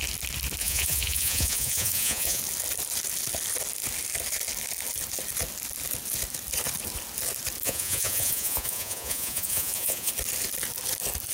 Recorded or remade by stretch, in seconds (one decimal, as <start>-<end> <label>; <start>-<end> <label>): 0.0-0.6 recorded; 0.6-2.4 remade; 2.4-7.6 recorded; 7.6-10.1 remade; 10.1-11.3 recorded